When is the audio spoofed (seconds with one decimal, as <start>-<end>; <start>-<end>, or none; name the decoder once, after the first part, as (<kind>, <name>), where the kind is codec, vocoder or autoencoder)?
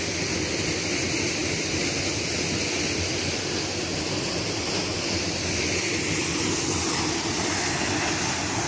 none